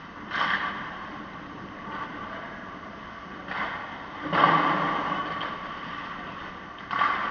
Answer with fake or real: real